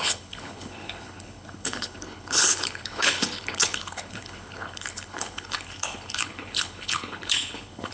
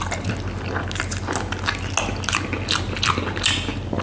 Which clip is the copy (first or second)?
first